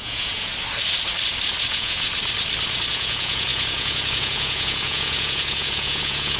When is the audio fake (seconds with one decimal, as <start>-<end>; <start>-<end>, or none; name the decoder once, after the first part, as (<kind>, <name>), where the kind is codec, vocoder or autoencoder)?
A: 0.0-0.5 (vocoder, Vocos); 1.7-2.1; 2.9-6.4